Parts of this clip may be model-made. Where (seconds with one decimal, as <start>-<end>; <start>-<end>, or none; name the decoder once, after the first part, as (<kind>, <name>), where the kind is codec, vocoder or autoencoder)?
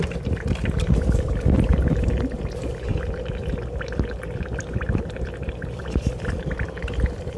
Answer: 0.0-2.9 (vocoder, BigVGAN v2); 4.1-7.4